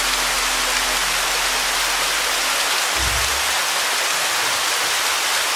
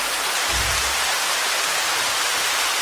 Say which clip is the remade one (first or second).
second